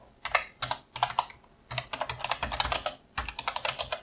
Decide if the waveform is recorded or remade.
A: recorded